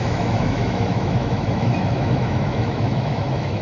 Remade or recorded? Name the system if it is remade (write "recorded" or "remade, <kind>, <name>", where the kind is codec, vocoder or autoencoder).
remade, autoencoder, DAC-VAE